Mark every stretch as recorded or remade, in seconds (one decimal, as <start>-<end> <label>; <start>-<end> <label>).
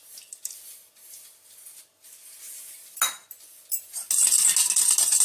0.0-5.2 recorded